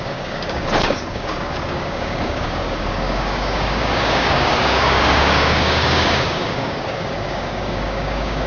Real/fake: fake